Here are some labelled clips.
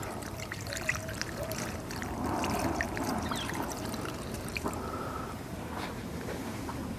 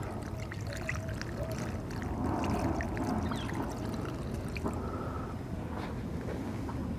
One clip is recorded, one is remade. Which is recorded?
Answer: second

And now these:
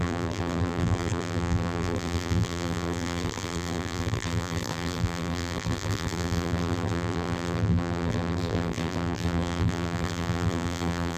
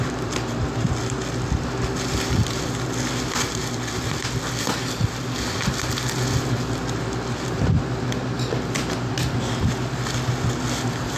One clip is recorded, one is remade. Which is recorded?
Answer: second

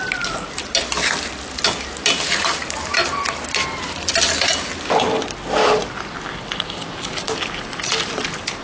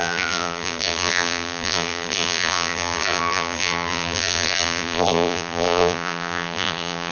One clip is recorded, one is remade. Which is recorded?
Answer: first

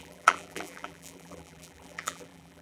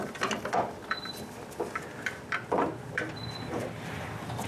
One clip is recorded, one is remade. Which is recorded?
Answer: second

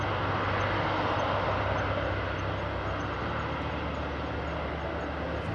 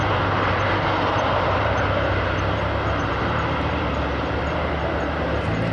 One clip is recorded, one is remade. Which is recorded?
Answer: first